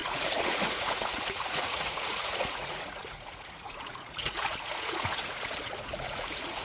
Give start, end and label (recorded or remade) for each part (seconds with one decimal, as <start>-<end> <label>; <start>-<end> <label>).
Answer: 0.0-6.6 remade